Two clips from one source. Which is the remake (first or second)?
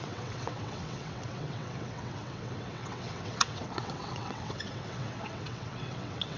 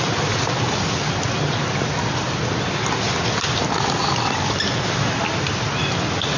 first